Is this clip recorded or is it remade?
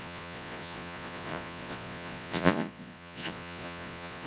remade